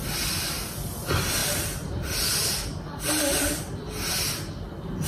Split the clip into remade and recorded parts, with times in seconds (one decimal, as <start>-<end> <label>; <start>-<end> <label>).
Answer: 0.0-5.1 recorded